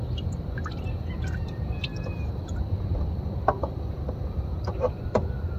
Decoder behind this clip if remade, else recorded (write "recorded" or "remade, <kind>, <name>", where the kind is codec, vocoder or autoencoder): remade, vocoder, BigVGAN v2